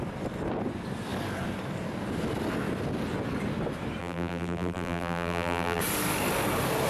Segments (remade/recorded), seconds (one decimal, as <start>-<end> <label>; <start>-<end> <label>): 0.0-4.0 recorded; 4.0-5.8 remade; 5.8-6.9 recorded